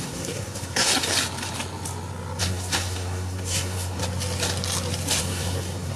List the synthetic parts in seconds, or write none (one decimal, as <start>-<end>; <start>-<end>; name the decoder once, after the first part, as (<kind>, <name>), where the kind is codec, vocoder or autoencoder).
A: 0.0-0.9 (codec, SNAC); 2.4-4.0; 5.2-6.0